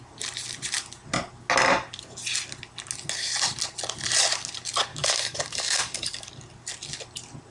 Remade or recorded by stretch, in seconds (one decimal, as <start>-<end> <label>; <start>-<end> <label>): 0.0-4.9 recorded; 4.9-6.3 remade; 6.3-7.5 recorded